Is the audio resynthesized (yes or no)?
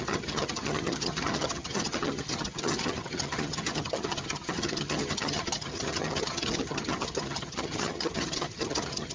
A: yes